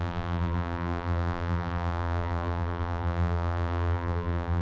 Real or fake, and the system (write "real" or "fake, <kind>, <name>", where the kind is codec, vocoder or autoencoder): fake, vocoder, BigVGAN v2